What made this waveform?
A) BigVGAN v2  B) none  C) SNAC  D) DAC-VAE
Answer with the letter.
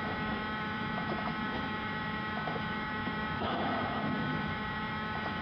D